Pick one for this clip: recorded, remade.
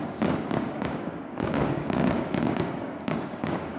remade